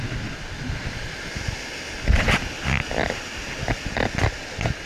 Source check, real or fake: real